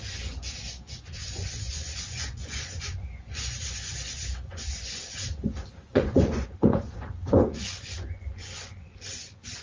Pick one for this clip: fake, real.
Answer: fake